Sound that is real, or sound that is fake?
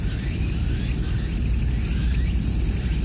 real